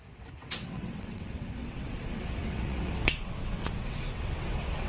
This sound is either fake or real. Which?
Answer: fake